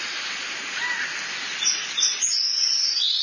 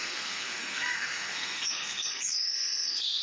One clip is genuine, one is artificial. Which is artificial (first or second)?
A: second